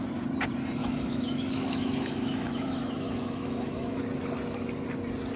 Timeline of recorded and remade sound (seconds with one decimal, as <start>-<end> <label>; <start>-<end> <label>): 0.0-0.8 recorded; 0.8-4.0 remade; 4.0-5.4 recorded